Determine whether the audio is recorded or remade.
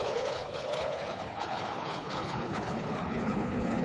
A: remade